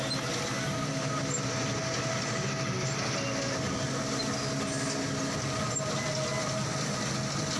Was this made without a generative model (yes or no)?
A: yes